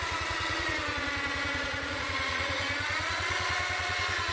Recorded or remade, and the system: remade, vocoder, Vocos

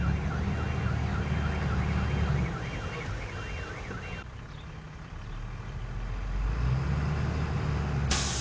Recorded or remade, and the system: recorded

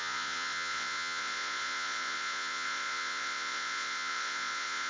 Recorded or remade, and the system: remade, vocoder, Vocos